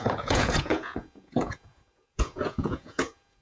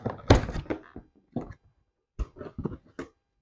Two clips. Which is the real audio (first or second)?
second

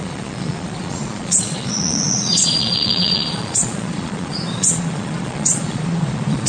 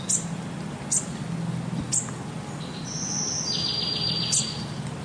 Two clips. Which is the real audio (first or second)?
second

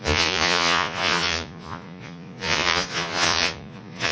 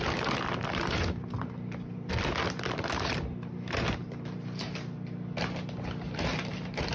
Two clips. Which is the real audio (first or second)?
second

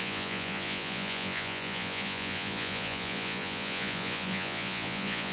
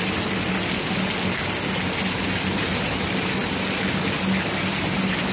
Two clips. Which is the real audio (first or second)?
second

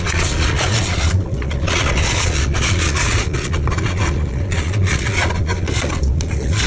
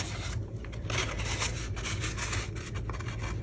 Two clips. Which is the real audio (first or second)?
second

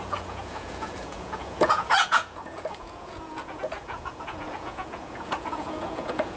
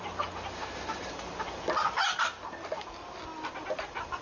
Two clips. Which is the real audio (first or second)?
second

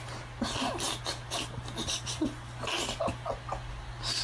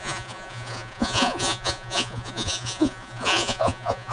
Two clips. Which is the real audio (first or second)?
first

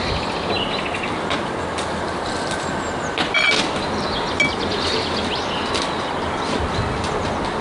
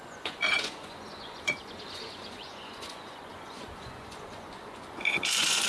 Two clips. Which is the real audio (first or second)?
first